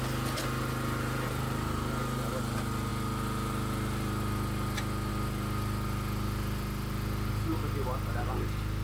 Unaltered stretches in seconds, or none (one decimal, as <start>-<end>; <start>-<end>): 0.0-8.8